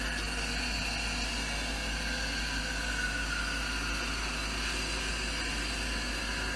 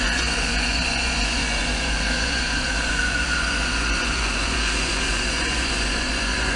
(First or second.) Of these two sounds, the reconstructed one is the second